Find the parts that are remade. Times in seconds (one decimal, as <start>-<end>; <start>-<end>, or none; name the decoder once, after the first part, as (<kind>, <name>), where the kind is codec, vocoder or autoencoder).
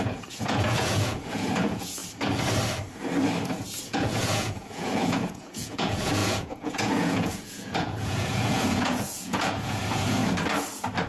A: 0.0-2.0 (vocoder, Vocos); 3.8-10.2